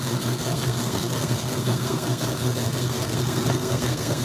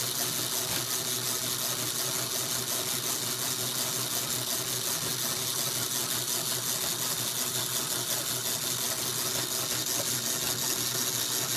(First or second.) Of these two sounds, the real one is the second